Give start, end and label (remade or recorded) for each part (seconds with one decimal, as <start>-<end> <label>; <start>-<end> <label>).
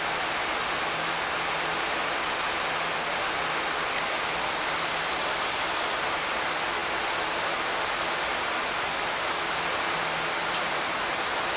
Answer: 0.0-11.6 recorded